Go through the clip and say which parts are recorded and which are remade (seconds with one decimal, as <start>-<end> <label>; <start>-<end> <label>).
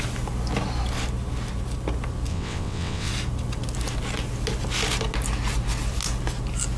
0.0-2.3 recorded; 2.3-3.1 remade; 3.1-6.8 recorded